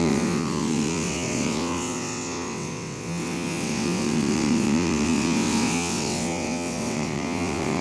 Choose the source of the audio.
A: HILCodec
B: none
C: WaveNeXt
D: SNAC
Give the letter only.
C